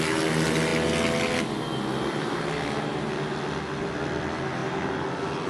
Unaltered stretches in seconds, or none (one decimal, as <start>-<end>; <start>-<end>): 0.0-5.5